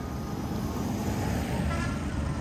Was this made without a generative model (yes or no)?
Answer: no